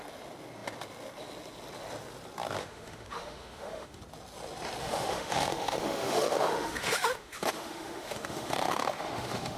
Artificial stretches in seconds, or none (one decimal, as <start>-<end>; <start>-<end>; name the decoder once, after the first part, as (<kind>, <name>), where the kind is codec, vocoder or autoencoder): 2.6-4.0 (autoencoder, DAC-VAE); 4.8-9.6